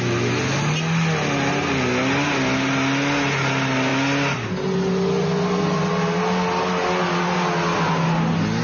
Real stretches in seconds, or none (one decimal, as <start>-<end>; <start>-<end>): 0.0-8.6